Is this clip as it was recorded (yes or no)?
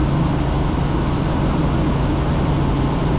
yes